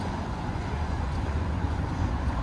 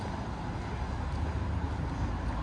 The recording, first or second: second